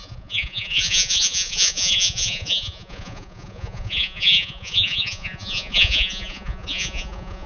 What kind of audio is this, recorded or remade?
remade